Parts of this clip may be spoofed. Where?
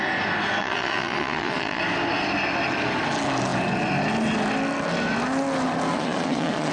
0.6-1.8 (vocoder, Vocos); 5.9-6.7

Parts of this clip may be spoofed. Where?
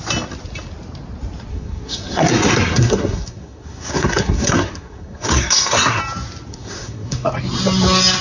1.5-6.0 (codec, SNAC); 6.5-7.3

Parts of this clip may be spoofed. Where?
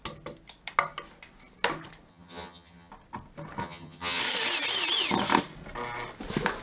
2.1-2.9 (vocoder, HiFi-GAN); 3.6-4.2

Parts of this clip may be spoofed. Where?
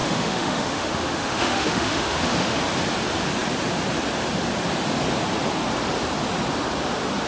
0.0-2.6 (autoencoder, DAC-VAE)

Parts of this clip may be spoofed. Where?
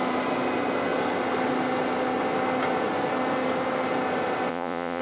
4.5-5.0 (vocoder, Vocos)